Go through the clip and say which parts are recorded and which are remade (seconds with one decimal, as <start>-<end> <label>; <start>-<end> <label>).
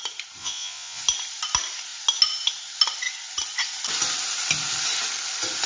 0.0-0.4 recorded; 0.4-1.0 remade; 1.0-5.7 recorded